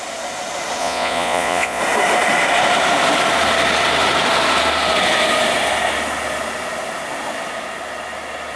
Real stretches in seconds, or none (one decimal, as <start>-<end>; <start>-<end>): 0.0-0.8; 1.8-8.6